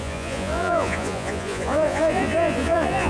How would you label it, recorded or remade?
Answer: remade